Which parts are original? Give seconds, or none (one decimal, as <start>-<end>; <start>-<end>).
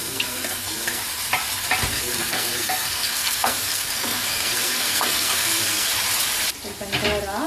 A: 1.0-1.9; 5.9-7.5